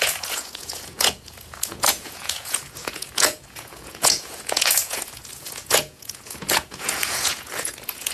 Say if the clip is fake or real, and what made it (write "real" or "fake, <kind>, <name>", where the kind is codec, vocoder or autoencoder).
fake, vocoder, Vocos